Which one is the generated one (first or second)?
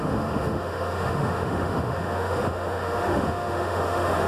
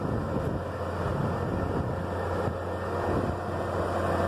first